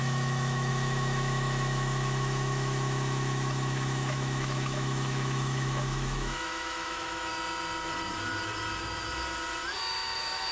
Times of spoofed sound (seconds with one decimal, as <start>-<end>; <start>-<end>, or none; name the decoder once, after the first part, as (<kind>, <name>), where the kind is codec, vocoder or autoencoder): 0.0-7.3 (autoencoder, DAC-VAE); 9.9-10.5